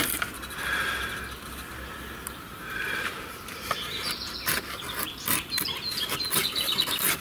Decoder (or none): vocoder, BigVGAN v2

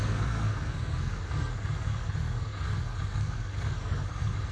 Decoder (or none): codec, SNAC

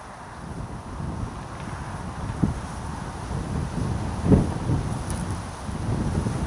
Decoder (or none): none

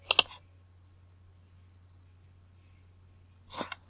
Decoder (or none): none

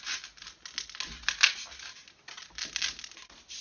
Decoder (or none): none